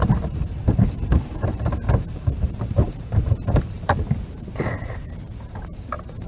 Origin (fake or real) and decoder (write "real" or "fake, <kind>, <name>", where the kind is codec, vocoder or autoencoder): fake, vocoder, BigVGAN v2